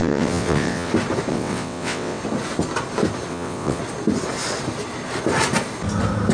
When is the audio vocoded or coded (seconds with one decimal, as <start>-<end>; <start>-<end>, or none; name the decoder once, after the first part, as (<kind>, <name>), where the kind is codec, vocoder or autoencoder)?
0.0-0.9 (vocoder, WaveNeXt); 1.3-2.2; 3.3-3.8